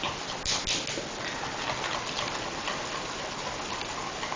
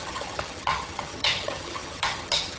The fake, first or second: second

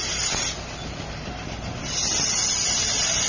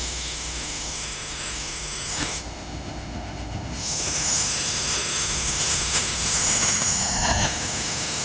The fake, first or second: second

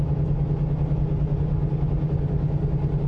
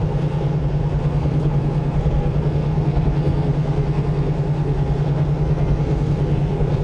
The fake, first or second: second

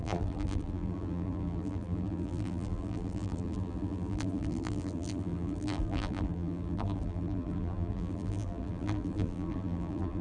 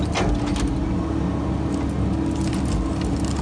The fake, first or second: first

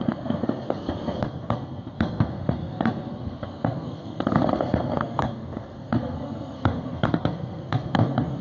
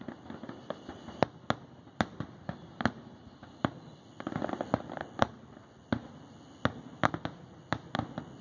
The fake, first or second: first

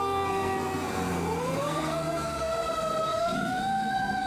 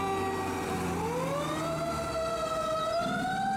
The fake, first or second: first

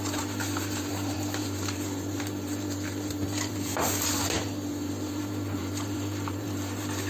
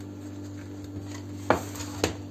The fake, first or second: first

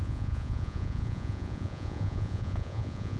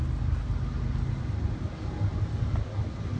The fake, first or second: first